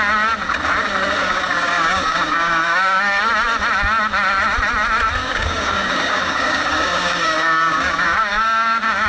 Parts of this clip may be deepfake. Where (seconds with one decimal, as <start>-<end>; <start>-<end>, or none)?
1.2-3.2; 5.2-9.1